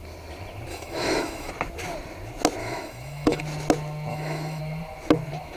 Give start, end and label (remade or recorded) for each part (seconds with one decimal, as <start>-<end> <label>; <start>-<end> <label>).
0.0-0.7 recorded; 0.7-1.5 remade; 1.5-2.6 recorded; 2.6-3.4 remade; 3.4-4.1 recorded; 4.1-4.6 remade; 4.6-5.6 recorded